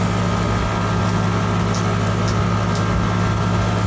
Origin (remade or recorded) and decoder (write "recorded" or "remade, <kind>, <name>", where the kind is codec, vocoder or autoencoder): recorded